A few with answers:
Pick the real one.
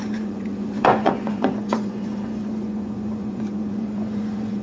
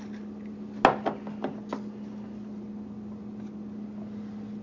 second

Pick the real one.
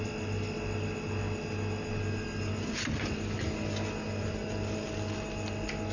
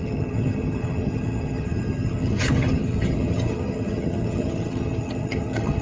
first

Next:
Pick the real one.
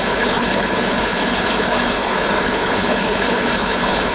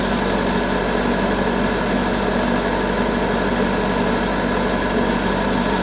second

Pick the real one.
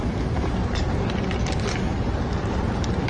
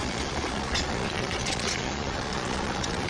first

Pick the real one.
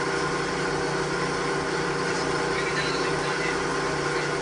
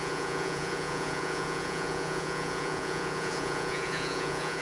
first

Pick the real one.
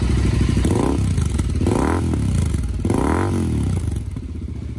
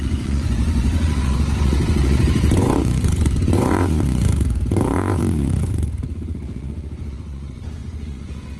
first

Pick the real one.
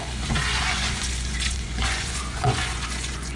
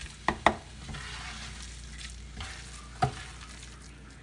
second